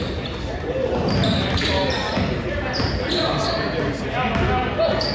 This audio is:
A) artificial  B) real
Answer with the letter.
B